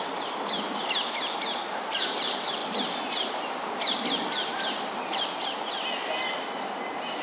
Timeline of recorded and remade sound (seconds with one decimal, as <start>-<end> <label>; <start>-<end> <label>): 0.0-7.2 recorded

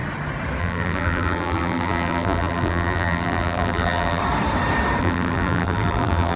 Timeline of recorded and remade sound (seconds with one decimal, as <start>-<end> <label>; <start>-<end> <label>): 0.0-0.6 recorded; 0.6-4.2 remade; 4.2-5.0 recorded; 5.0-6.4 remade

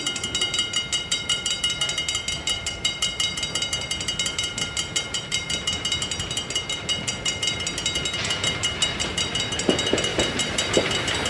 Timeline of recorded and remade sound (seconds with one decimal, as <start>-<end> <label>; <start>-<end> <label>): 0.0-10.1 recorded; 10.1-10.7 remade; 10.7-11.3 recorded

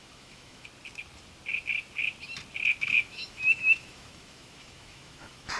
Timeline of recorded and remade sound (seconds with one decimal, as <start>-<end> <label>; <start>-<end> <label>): 0.0-0.7 remade; 0.7-2.8 recorded; 2.8-5.6 remade

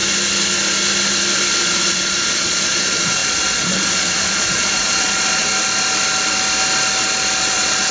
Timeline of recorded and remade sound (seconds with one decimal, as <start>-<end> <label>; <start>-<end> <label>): 0.0-1.6 recorded; 1.6-5.5 remade; 5.5-7.4 recorded; 7.4-7.9 remade

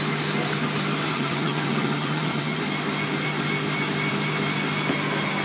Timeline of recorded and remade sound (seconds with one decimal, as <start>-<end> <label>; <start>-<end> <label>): 0.0-1.1 recorded; 1.1-2.6 remade; 2.6-5.4 recorded

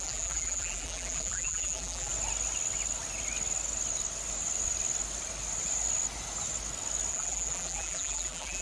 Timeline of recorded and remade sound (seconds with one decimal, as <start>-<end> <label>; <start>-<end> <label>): 0.0-2.1 remade; 2.1-7.1 recorded; 7.1-8.6 remade